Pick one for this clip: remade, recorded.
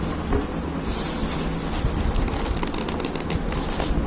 recorded